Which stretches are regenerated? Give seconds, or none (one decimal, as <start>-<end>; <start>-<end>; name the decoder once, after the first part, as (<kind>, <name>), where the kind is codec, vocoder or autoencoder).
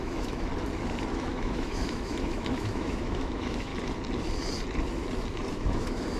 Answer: 0.0-0.5 (autoencoder, DAC-VAE); 1.1-3.7; 5.5-6.2